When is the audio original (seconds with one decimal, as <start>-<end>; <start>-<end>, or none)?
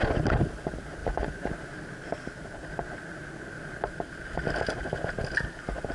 0.0-1.0; 1.5-5.9